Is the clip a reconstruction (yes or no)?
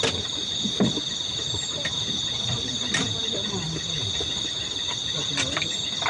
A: no